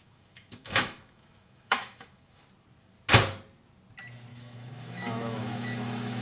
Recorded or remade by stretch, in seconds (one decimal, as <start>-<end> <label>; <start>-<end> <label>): 0.0-2.4 remade; 2.4-4.3 recorded; 4.3-6.2 remade